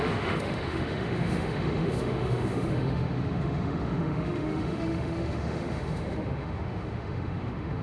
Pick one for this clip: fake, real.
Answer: fake